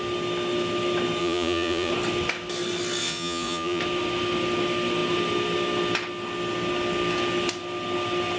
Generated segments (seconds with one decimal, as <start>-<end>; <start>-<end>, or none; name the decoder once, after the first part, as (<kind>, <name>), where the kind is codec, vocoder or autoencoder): 1.2-1.9 (vocoder, Vocos); 3.0-3.8